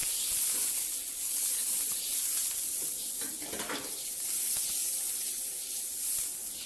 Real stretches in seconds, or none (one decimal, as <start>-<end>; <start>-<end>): 0.0-2.4; 3.3-6.7